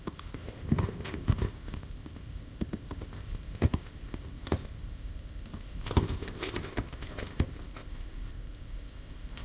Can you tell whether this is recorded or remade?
remade